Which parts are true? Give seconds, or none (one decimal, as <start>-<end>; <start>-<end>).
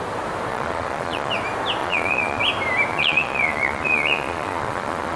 0.0-0.5; 1.3-1.8; 2.4-2.9